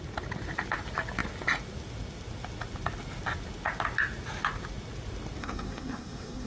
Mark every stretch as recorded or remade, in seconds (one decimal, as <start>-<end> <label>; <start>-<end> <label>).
0.0-5.4 recorded; 5.4-6.5 remade